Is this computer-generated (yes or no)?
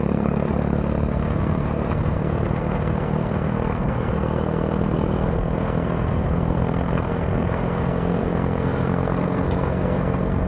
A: yes